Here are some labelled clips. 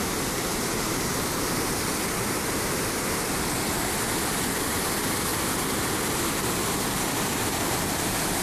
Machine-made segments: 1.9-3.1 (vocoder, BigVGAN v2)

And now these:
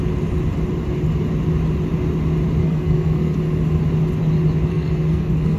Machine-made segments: 2.6-3.3 (codec, SNAC); 4.7-5.6

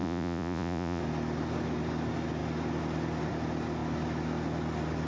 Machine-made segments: 0.0-1.0 (vocoder, Vocos)

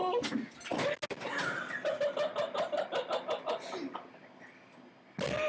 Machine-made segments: none

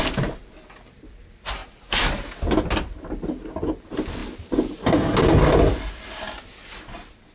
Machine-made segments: none

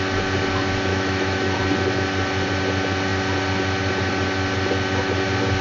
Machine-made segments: 0.9-1.6 (autoencoder, DAC-VAE)

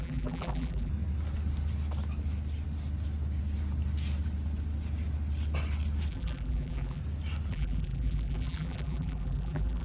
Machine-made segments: 0.0-0.9 (vocoder, BigVGAN v2); 6.1-7.0; 7.5-9.8

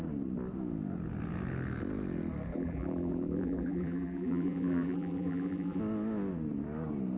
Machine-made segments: 2.5-5.8 (vocoder, BigVGAN v2)